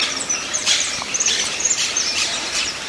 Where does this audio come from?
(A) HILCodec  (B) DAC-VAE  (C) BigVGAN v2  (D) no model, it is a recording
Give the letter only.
C